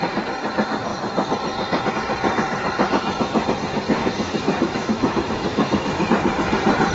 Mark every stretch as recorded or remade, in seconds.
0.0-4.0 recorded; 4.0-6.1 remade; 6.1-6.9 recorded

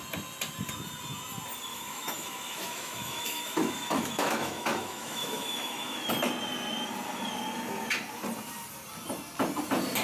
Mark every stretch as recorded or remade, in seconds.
0.0-1.7 recorded; 1.7-6.1 remade; 6.1-10.0 recorded

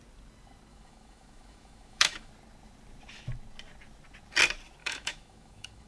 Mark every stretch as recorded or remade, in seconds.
0.0-0.7 recorded; 0.7-2.3 remade; 2.3-4.8 recorded; 4.8-5.9 remade

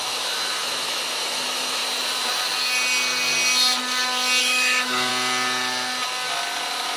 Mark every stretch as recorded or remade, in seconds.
0.0-1.8 remade; 1.8-4.4 recorded; 4.4-5.1 remade; 5.1-7.0 recorded